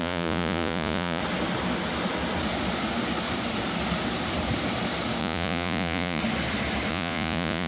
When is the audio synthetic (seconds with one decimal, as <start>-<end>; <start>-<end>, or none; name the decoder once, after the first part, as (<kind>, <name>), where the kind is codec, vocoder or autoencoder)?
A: 0.0-1.2 (vocoder, Vocos); 5.2-6.2; 6.9-7.7